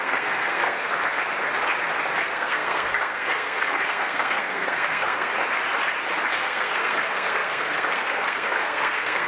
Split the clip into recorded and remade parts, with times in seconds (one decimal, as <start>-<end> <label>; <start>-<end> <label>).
0.0-1.0 remade; 1.0-2.2 recorded; 2.2-5.3 remade; 5.3-6.3 recorded; 6.3-9.3 remade